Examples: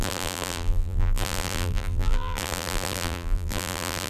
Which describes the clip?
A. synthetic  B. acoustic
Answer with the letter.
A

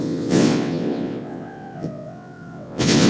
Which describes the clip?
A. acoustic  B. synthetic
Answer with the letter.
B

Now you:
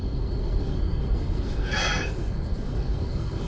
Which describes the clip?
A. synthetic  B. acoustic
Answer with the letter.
A